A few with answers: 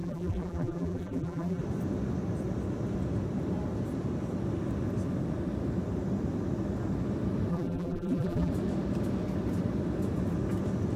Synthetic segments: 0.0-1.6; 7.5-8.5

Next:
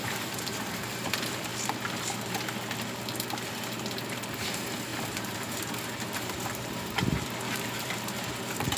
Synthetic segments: 0.0-1.5; 4.3-8.8

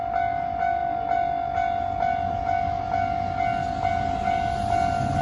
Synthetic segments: none